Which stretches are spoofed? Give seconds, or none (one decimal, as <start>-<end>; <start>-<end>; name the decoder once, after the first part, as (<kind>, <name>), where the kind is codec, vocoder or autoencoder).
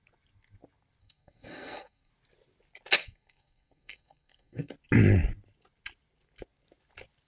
1.0-2.1 (codec, SNAC); 3.0-4.7